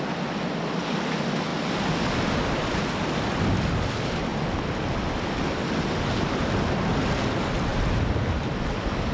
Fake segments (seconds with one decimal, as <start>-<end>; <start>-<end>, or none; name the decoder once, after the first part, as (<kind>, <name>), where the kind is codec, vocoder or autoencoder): none